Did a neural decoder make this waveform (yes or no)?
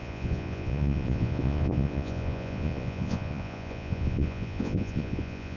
yes